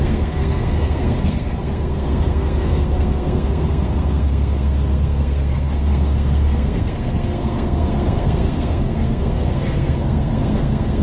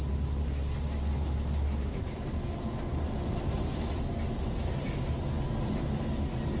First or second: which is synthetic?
first